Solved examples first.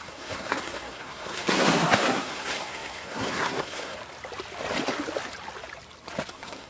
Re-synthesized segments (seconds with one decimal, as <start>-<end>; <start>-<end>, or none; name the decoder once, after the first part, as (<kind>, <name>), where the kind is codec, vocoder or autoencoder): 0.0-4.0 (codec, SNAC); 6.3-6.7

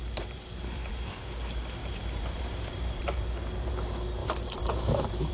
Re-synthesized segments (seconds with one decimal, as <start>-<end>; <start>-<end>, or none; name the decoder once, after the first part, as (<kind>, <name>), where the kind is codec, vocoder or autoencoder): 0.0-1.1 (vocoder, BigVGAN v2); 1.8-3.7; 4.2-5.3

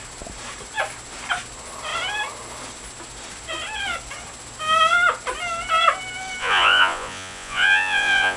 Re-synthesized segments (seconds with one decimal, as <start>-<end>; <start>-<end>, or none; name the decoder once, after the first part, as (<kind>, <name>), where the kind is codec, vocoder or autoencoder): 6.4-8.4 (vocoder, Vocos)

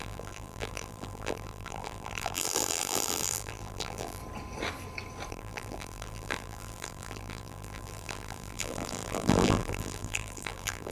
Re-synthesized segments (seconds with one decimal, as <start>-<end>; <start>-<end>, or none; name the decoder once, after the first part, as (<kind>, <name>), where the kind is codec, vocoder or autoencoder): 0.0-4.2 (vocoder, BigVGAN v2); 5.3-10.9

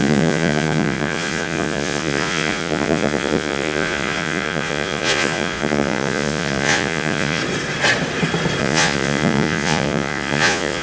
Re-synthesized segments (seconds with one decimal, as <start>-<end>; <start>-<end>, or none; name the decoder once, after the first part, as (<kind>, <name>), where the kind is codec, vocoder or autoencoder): 0.0-7.4 (vocoder, Vocos); 8.6-10.8

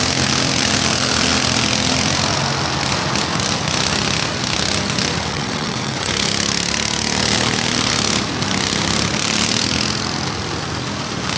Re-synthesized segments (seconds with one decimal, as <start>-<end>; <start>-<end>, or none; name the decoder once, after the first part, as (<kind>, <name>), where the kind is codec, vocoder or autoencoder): 5.3-6.1 (vocoder, WaveNeXt)

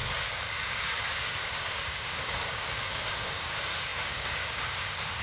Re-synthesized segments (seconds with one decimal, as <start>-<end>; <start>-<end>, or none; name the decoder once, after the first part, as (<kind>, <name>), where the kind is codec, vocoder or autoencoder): 0.0-5.2 (codec, DAC)